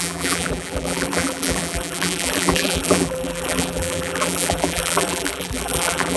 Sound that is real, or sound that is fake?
fake